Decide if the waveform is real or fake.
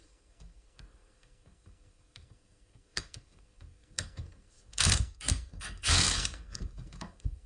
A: fake